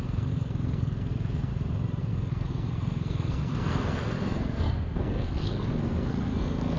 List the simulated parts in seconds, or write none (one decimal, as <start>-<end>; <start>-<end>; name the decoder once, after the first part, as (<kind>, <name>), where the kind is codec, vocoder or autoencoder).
0.0-1.5 (codec, SNAC); 2.0-6.8